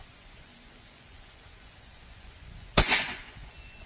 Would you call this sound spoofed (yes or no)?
yes